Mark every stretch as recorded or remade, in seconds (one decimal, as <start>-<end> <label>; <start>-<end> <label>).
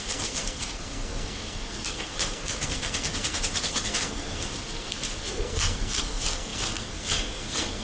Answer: 0.0-7.8 remade